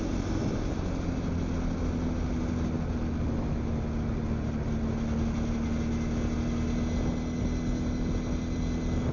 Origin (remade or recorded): recorded